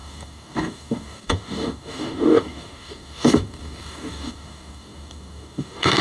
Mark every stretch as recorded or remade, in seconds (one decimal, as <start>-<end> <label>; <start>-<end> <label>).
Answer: 0.0-6.0 remade